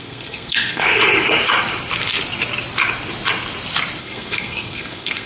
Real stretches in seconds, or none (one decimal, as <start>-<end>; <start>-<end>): 1.0-4.0